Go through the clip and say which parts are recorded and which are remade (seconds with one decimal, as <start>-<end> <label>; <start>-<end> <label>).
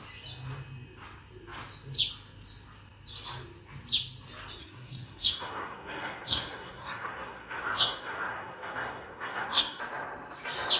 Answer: 0.0-4.6 recorded; 4.6-9.8 remade; 9.8-10.8 recorded